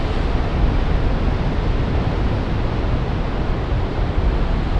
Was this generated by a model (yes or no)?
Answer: no